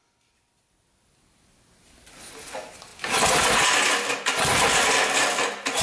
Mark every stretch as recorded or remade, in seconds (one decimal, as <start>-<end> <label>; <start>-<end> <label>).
0.0-5.8 recorded